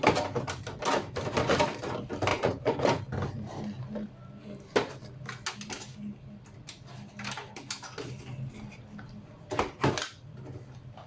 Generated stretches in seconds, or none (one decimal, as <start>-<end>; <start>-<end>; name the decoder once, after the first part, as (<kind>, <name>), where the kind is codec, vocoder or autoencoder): 2.3-2.8 (vocoder, Vocos)